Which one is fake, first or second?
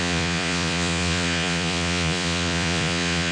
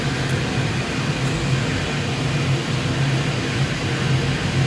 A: first